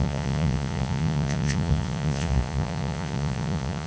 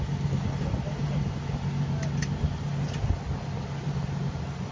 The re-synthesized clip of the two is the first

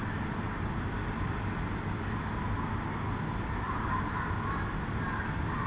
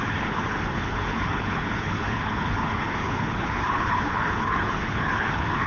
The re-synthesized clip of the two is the second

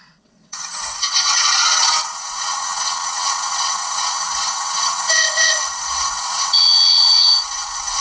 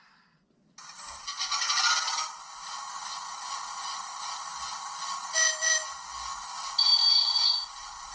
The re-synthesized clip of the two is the first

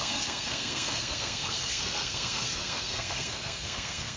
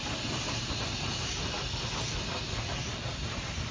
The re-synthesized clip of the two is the first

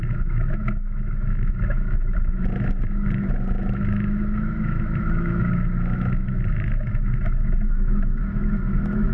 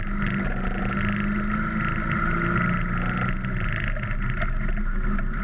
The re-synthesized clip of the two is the first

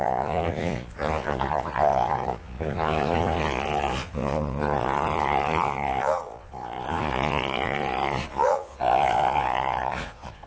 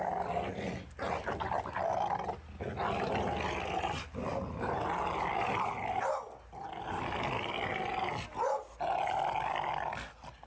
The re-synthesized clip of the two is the first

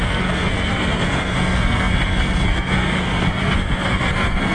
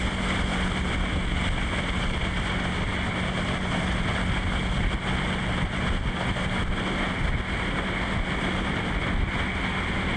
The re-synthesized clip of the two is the first